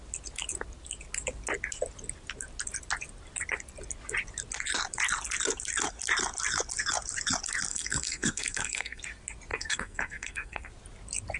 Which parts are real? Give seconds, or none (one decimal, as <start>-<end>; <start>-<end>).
0.0-7.7; 9.0-9.5; 10.7-11.4